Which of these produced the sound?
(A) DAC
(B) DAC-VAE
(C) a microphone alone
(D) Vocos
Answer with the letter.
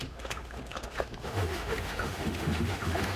B